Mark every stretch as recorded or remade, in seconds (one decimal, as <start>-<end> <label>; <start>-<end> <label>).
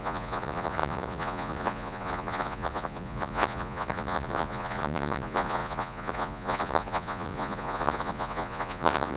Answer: 0.0-9.2 remade